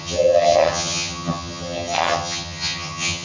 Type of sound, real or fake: fake